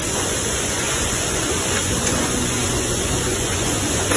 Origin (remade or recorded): remade